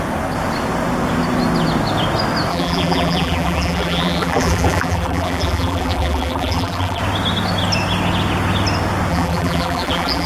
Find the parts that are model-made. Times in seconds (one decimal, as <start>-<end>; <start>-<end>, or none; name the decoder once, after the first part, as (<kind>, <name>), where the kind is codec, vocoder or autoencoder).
2.5-7.0 (vocoder, BigVGAN v2); 9.1-10.3